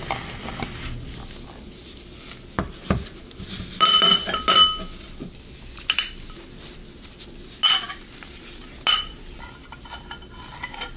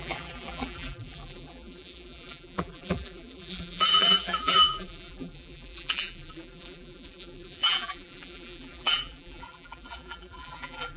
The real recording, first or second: first